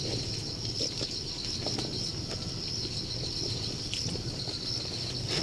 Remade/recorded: recorded